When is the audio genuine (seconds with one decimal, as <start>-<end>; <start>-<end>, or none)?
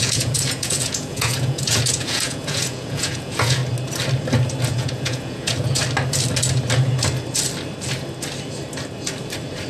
3.6-4.7; 5.8-9.7